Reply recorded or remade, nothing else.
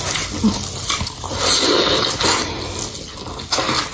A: recorded